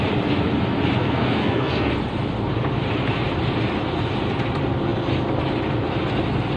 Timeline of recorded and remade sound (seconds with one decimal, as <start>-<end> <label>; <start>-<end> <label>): 0.0-1.0 recorded; 1.0-1.9 remade; 1.9-6.6 recorded

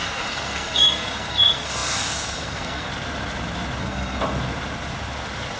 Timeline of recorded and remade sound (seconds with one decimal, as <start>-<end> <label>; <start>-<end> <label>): 0.0-2.9 remade; 2.9-3.8 recorded; 3.8-4.2 remade; 4.2-5.6 recorded

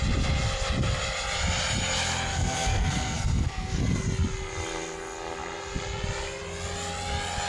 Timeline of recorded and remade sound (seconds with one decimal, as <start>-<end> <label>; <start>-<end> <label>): 0.0-2.3 recorded; 2.3-3.8 remade; 3.8-7.5 recorded

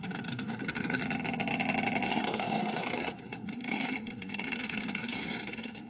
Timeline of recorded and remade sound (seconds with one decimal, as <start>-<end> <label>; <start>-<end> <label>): 0.0-1.0 remade; 1.0-2.1 recorded; 2.1-5.9 remade